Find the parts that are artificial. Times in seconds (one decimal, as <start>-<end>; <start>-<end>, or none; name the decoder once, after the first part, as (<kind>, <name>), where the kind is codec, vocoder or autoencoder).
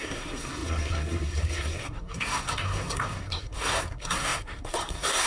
0.0-5.3 (codec, SNAC)